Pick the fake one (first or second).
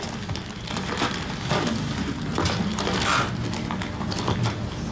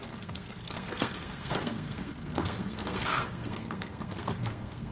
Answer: second